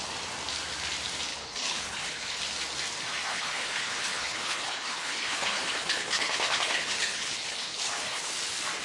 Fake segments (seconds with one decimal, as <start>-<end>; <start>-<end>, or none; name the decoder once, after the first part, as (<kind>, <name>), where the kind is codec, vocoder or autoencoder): 1.3-2.4 (codec, HILCodec); 3.3-8.3